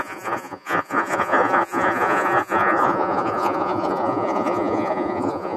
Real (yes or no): no